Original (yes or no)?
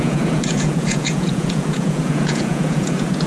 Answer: no